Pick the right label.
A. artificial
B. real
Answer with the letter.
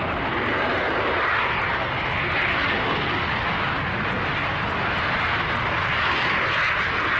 B